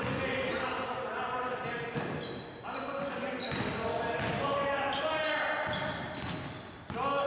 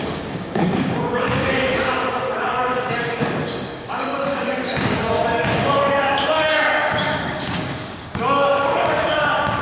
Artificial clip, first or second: second